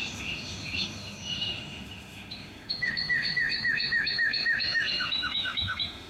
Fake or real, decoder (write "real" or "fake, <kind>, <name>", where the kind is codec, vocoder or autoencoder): fake, autoencoder, DAC-VAE